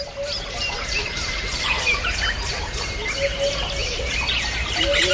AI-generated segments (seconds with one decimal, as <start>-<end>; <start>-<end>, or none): 1.0-3.1; 3.8-5.1